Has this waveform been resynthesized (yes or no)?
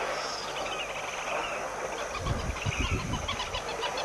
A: no